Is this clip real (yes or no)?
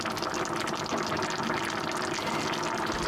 yes